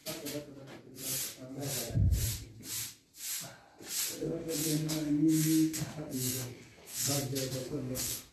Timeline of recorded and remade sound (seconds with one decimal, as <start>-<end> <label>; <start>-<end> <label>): 0.0-4.2 recorded; 4.2-7.1 remade; 7.1-7.6 recorded; 7.6-8.3 remade